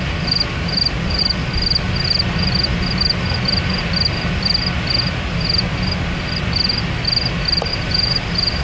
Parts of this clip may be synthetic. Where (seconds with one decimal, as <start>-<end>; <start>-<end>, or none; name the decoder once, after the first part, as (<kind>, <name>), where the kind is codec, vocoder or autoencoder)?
7.7-8.6 (vocoder, BigVGAN v2)